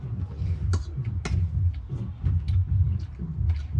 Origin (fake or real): real